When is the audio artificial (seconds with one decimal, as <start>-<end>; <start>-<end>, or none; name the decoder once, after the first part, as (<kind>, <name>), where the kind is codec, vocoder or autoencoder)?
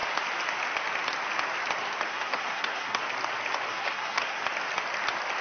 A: 2.1-3.0 (codec, SNAC); 3.7-4.4